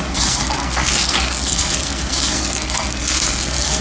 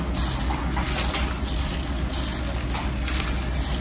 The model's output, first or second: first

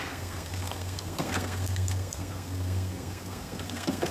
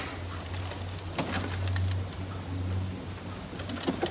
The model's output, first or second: first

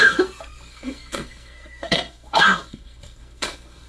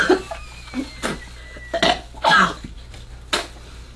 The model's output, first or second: first